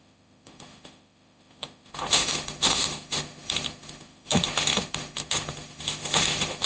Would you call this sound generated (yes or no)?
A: yes